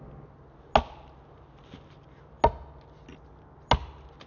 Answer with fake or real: real